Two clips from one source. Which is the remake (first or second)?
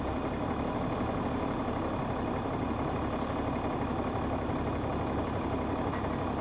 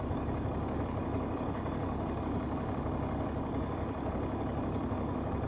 second